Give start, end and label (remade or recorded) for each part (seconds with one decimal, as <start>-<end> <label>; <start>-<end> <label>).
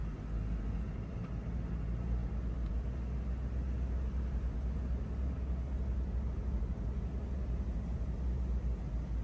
0.0-9.2 recorded